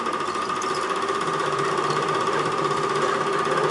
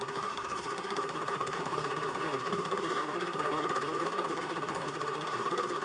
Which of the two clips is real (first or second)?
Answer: first